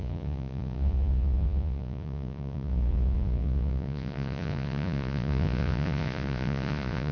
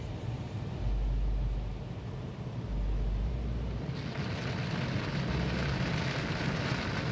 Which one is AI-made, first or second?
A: first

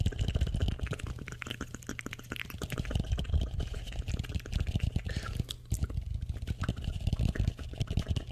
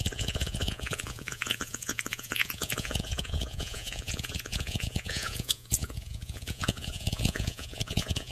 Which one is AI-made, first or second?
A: second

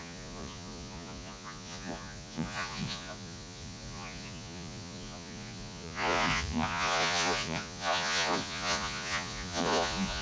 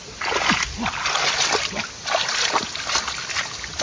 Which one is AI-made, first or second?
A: first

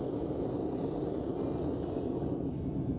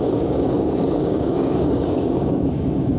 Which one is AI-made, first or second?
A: second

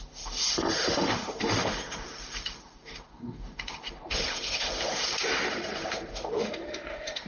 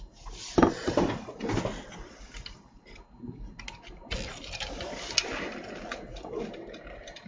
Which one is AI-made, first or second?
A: first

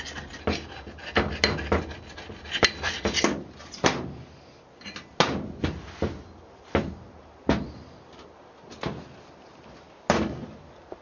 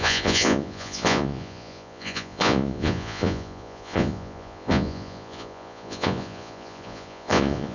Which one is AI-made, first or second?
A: second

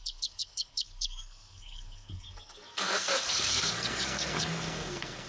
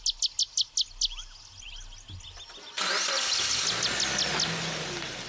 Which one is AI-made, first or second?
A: first